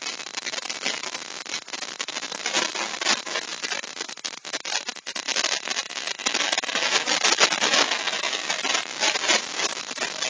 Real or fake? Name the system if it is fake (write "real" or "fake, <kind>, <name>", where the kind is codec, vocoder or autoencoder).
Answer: real